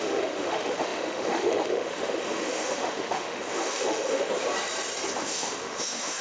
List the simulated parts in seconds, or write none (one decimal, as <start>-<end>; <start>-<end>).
0.0-4.3; 5.2-6.2